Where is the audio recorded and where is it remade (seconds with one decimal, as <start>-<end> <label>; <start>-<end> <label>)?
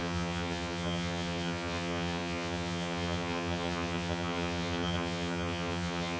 0.0-6.2 remade